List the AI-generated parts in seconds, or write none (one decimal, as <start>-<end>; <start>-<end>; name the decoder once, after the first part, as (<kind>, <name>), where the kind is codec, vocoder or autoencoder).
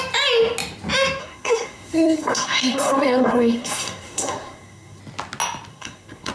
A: 1.2-5.0 (codec, SNAC); 5.7-6.3